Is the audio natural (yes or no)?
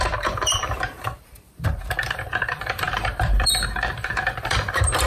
no